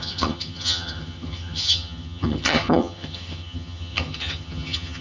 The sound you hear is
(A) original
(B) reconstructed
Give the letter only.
B